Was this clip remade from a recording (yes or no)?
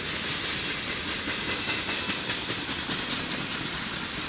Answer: no